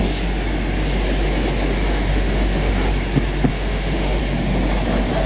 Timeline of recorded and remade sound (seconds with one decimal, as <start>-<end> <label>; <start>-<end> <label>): 0.0-2.1 recorded; 2.1-2.7 remade; 2.7-3.5 recorded; 3.5-4.2 remade; 4.2-5.3 recorded